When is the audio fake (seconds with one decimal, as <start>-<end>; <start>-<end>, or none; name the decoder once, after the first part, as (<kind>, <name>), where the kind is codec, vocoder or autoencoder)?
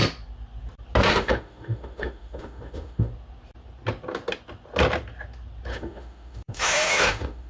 1.1-3.1 (autoencoder, DAC-VAE); 5.7-7.5